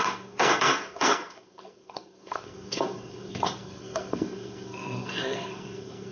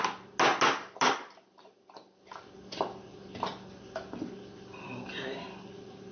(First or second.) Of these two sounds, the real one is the second